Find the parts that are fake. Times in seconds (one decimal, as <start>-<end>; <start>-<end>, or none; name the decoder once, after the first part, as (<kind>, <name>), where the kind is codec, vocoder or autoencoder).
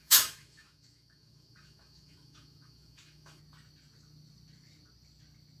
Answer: 0.0-3.4 (autoencoder, DAC-VAE)